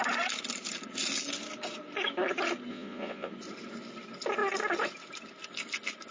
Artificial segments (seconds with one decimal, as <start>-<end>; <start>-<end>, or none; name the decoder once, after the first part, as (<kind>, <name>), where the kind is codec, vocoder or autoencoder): 2.7-3.3 (vocoder, Vocos)